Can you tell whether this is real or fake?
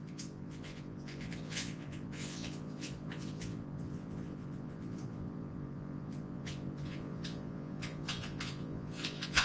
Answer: fake